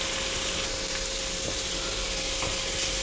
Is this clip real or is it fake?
real